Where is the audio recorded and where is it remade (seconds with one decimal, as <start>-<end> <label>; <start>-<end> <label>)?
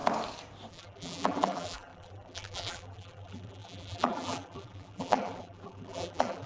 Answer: 0.0-0.7 recorded; 0.7-6.5 remade